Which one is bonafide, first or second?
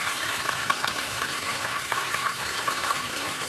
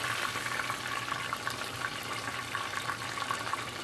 second